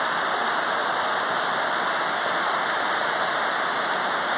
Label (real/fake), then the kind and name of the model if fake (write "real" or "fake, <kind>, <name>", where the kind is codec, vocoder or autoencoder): real